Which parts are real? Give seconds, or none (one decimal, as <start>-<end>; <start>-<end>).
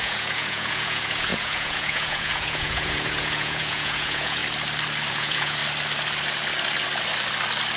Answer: 4.4-5.1; 5.6-7.8